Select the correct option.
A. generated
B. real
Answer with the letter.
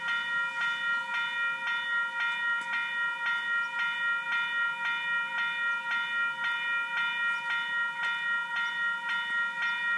B